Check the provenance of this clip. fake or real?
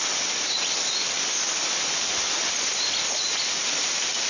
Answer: real